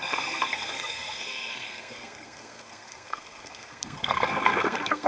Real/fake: fake